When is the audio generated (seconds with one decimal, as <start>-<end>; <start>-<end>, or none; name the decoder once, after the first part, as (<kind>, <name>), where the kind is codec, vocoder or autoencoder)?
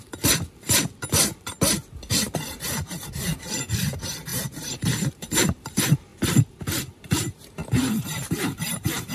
2.1-6.1 (vocoder, BigVGAN v2); 7.1-9.1